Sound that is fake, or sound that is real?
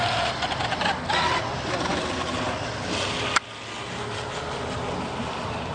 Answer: real